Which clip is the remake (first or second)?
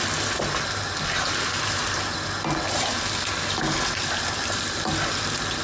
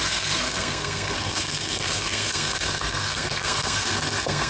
second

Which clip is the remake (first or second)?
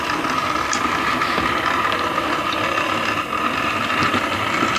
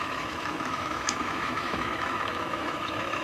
second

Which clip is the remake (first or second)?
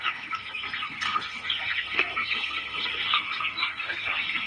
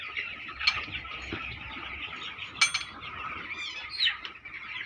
first